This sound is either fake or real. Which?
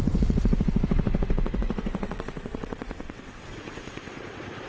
fake